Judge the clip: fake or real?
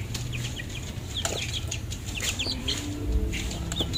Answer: fake